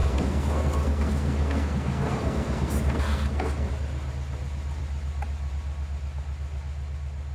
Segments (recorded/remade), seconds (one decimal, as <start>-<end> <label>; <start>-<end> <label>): 0.0-3.7 remade; 3.7-7.3 recorded

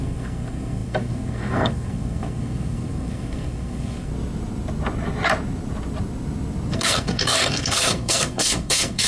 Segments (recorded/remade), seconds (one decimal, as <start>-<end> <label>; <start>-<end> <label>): 0.0-4.1 remade; 4.1-6.7 recorded; 6.7-9.1 remade

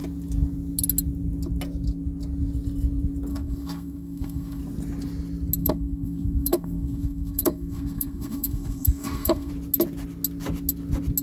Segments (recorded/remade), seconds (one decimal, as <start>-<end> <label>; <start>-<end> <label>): 0.0-3.3 recorded; 3.3-4.6 remade; 4.6-5.6 recorded; 5.6-9.5 remade; 9.5-11.2 recorded

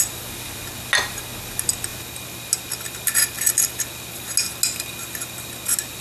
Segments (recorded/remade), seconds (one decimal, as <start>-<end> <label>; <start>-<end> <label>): 0.0-6.0 recorded

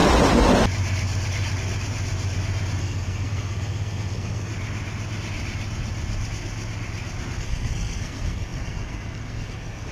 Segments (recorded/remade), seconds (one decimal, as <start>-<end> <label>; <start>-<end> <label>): 0.0-2.8 recorded; 2.8-4.5 remade; 4.5-7.4 recorded; 7.4-9.9 remade